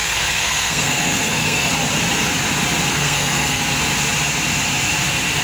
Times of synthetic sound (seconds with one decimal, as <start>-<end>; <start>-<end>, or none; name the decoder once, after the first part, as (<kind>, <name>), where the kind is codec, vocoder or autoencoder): 0.0-1.7 (codec, SNAC); 2.9-3.6

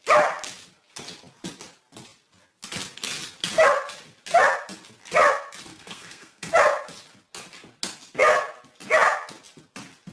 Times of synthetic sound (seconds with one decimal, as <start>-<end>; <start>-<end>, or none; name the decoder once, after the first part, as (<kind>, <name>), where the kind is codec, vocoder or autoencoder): 5.7-6.5 (codec, SNAC)

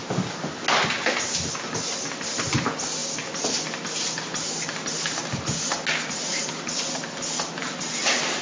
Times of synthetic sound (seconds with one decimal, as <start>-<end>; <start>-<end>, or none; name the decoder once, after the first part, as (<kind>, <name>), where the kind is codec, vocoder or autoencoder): none

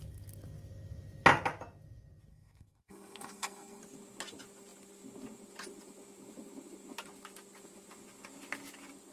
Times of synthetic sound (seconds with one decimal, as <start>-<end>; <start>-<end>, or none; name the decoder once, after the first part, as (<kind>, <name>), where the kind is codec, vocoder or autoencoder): 2.3-3.8 (codec, SNAC)